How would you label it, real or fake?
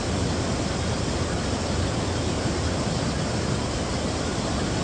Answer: real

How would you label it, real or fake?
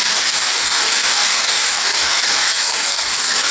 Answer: fake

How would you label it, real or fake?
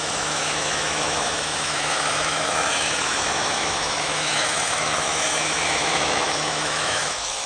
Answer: fake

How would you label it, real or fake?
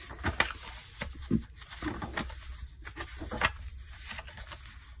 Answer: real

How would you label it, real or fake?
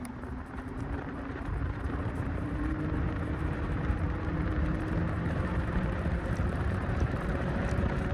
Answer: fake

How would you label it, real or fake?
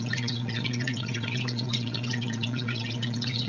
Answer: fake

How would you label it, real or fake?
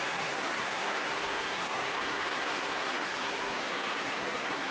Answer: fake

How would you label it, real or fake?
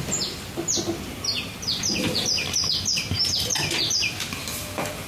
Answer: real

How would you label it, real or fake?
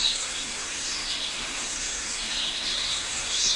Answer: fake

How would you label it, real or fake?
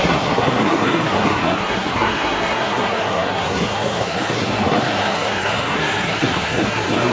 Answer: fake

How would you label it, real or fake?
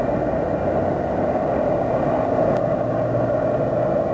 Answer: real